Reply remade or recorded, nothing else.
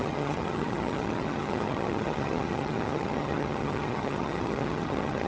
remade